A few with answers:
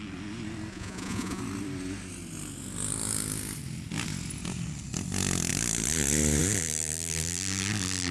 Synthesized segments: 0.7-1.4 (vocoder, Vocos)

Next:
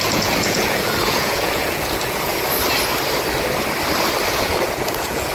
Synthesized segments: 0.0-2.3 (vocoder, Vocos); 4.3-5.3

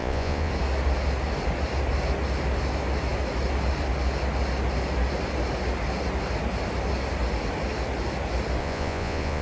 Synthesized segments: 0.0-0.5 (vocoder, Vocos); 8.6-9.4

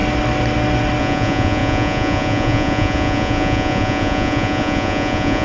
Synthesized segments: 1.0-5.4 (vocoder, Vocos)